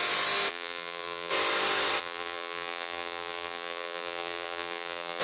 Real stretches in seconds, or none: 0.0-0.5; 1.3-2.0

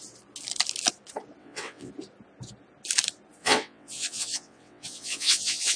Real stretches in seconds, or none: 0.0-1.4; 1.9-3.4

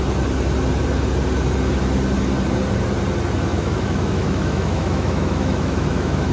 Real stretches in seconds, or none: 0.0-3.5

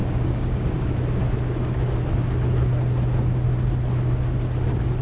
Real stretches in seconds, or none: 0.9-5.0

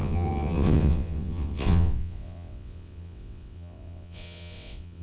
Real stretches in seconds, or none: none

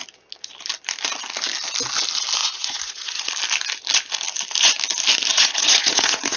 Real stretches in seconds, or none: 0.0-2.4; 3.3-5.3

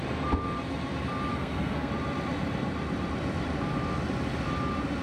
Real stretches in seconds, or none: 0.0-1.3; 1.9-5.0